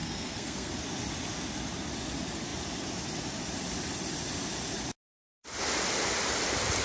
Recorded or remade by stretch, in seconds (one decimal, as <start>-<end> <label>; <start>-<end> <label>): 0.0-0.7 remade; 0.7-6.8 recorded